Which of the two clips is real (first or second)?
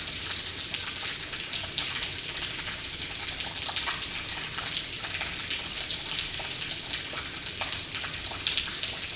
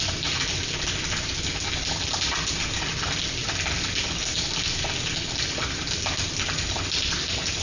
second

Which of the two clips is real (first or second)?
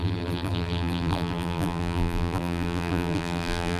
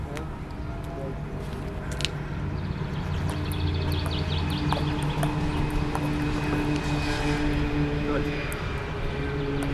second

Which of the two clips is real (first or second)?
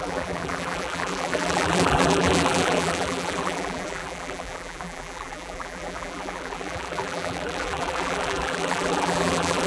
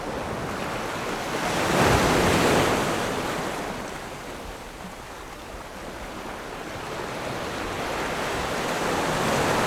second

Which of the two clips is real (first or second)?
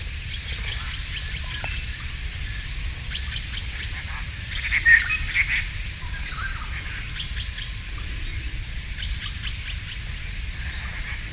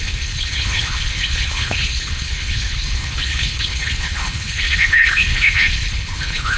first